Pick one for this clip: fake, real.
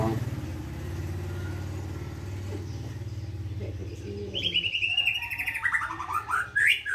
real